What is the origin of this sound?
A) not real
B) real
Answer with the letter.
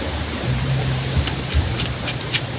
A